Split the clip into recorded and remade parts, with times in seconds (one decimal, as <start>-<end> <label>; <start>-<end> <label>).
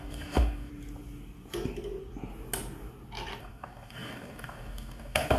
0.0-0.7 remade; 0.7-3.4 recorded; 3.4-5.4 remade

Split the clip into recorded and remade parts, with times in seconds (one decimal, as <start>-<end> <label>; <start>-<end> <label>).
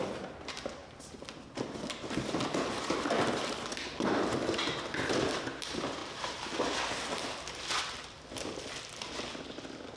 0.0-0.8 recorded; 0.8-1.3 remade; 1.3-6.0 recorded; 6.0-8.7 remade; 8.7-10.0 recorded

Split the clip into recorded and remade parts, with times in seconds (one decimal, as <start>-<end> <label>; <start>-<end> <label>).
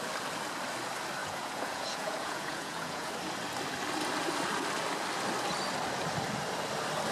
0.0-1.2 recorded; 1.2-3.1 remade; 3.1-7.1 recorded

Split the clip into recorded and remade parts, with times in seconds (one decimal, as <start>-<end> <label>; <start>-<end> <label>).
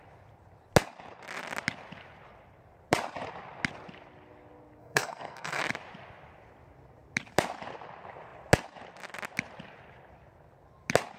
0.0-4.8 recorded; 4.8-5.6 remade; 5.6-11.2 recorded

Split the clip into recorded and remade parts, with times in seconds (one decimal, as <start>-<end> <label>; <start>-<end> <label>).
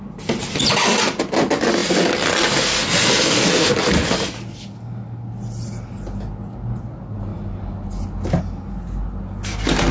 0.0-9.9 recorded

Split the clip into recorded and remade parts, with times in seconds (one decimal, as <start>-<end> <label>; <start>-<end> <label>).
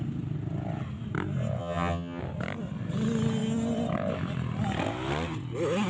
0.0-1.6 recorded; 1.6-2.2 remade; 2.2-5.9 recorded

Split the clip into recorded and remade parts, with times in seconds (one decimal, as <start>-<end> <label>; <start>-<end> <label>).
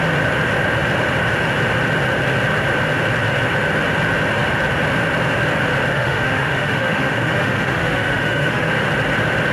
0.0-5.9 recorded; 5.9-8.7 remade; 8.7-9.5 recorded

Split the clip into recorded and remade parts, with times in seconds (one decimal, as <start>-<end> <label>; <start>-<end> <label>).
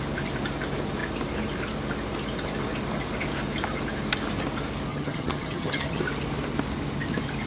0.0-4.9 recorded; 4.9-6.0 remade; 6.0-7.5 recorded